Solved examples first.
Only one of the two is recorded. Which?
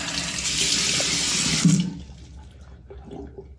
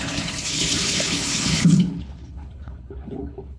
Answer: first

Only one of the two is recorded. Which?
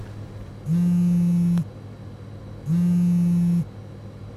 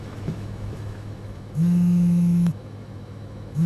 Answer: first